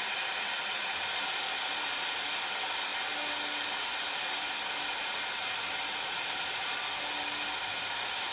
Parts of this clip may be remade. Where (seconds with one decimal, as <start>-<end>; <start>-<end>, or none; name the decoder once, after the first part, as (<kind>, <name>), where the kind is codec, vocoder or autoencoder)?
none